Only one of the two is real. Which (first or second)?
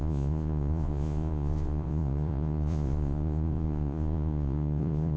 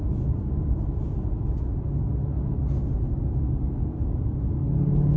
second